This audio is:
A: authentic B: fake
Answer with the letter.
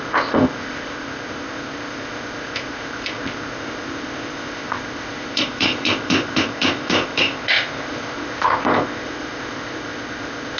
B